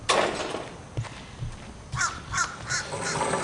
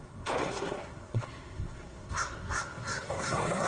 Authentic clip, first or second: first